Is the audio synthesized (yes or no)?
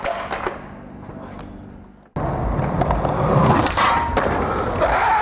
no